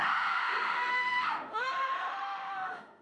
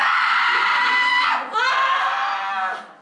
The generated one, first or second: first